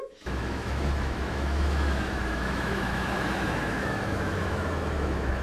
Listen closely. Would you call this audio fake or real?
fake